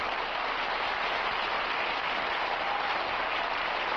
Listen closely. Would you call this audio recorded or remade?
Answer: remade